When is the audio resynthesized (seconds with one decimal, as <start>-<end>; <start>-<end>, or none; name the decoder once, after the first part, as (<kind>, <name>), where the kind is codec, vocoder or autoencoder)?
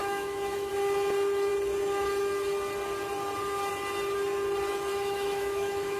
0.0-0.7 (autoencoder, DAC-VAE); 4.9-6.0